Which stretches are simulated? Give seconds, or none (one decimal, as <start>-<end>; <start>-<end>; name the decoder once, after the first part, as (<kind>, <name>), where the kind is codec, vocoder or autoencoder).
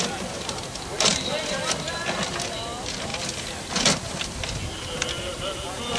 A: 1.1-1.6 (vocoder, BigVGAN v2)